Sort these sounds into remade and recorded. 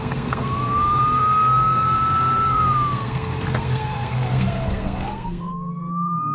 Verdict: remade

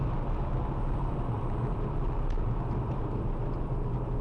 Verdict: recorded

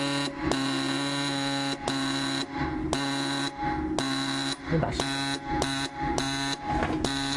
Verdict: recorded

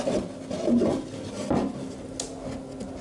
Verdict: recorded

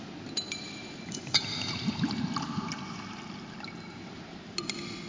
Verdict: recorded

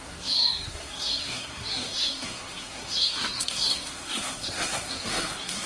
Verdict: remade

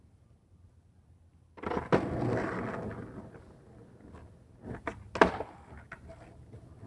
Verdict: recorded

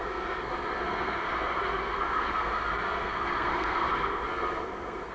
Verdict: remade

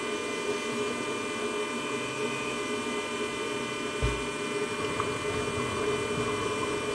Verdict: recorded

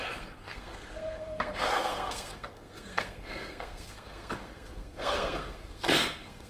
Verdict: remade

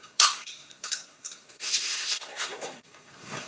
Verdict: remade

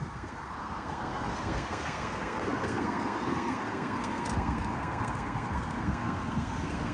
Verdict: remade